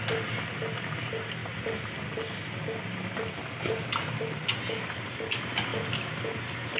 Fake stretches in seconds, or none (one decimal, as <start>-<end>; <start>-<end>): none